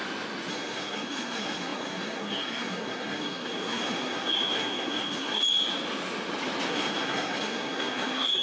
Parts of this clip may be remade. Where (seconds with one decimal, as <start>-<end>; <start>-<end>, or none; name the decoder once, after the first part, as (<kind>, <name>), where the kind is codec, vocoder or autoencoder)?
0.5-5.4 (codec, SNAC); 6.7-8.4

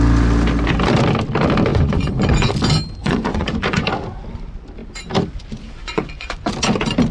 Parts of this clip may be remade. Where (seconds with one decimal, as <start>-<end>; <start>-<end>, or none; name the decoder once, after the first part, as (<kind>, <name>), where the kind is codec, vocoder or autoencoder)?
1.7-2.5 (vocoder, Vocos); 3.0-3.9; 5.8-6.5

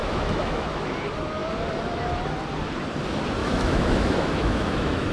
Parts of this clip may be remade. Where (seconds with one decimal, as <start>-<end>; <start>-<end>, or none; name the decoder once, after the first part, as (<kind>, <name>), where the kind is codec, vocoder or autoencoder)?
0.0-0.9 (autoencoder, DAC-VAE); 3.4-5.1